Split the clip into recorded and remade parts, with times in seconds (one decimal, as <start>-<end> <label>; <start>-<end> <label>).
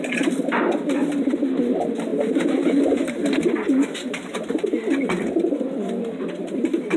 0.0-7.0 recorded